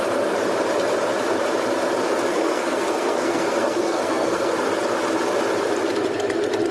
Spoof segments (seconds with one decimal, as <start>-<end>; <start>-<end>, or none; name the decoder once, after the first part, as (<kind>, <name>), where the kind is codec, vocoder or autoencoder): 2.3-4.5 (codec, SNAC)

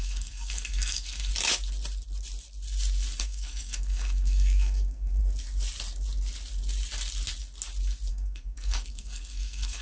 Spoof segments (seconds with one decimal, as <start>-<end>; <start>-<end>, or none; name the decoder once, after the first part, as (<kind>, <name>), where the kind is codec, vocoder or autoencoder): 0.0-1.3 (codec, SNAC); 3.2-5.2; 8.1-9.8

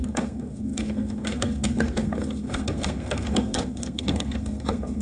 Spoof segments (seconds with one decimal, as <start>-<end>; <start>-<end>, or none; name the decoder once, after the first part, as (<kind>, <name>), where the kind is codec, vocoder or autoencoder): 0.0-5.0 (codec, SNAC)

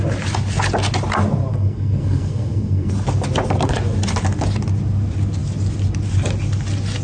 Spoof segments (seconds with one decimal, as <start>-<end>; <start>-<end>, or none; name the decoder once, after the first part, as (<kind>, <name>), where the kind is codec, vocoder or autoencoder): 1.5-2.9 (codec, SNAC)

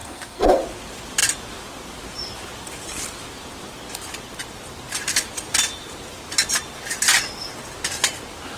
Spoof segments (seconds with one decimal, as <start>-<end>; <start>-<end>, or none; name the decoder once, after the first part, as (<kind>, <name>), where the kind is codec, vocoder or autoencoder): 0.0-0.6 (codec, SNAC)

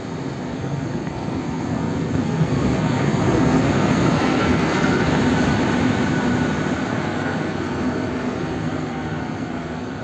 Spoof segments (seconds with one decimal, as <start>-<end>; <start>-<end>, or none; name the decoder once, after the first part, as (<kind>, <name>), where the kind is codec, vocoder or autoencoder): 0.5-5.2 (codec, SNAC); 6.9-10.0

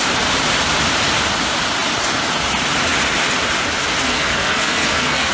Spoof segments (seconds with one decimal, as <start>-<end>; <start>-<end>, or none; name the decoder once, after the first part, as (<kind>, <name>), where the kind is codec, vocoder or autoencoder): 4.0-5.3 (codec, SNAC)